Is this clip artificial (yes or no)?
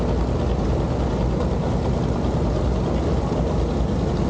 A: no